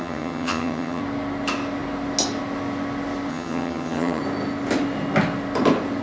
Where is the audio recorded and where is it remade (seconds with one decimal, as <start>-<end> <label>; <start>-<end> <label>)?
0.0-1.0 remade; 1.0-3.3 recorded; 3.3-4.2 remade; 4.2-6.0 recorded